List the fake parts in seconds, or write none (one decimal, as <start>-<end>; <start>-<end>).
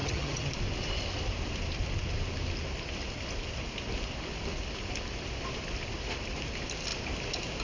0.0-0.5